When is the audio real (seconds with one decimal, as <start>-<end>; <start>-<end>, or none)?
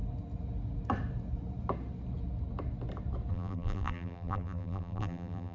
0.0-3.3